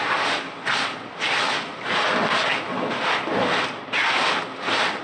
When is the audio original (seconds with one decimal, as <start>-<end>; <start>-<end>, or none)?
0.0-5.0